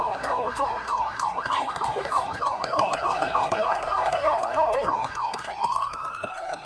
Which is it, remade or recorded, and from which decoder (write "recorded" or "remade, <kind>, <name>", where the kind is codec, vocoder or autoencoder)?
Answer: remade, codec, SNAC